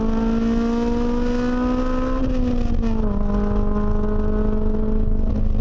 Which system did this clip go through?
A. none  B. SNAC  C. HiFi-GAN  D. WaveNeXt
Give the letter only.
A